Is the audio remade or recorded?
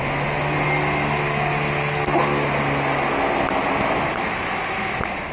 recorded